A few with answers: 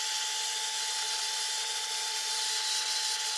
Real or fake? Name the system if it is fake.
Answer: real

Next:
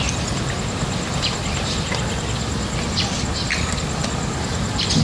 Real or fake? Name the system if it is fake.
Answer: real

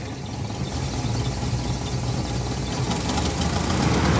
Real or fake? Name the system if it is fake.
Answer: real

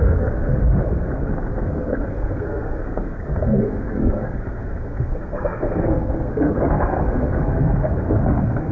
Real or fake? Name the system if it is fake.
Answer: fake, codec, SNAC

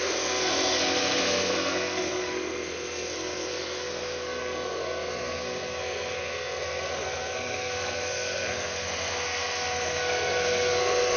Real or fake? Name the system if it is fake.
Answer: fake, codec, SNAC